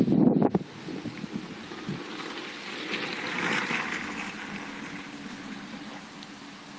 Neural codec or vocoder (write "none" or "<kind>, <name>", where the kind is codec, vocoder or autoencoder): none